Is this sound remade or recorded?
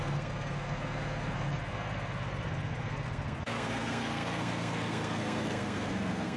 remade